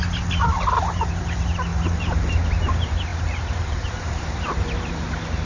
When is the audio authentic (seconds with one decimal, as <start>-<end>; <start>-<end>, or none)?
0.0-1.7; 2.3-3.1; 5.0-5.5